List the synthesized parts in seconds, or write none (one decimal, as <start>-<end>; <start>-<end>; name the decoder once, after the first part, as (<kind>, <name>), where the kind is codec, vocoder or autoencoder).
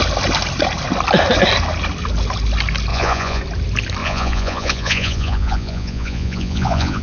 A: 2.9-3.4 (vocoder, Vocos); 4.0-7.0